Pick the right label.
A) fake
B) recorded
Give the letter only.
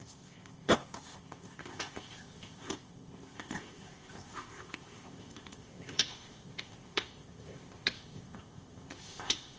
A